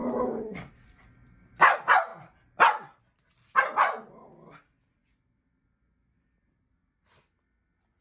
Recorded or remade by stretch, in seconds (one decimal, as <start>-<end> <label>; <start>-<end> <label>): 0.0-8.0 recorded